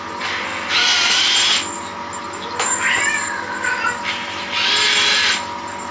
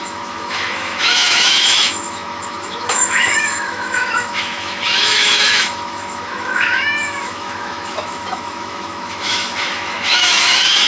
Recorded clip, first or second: first